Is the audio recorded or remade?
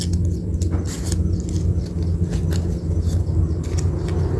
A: recorded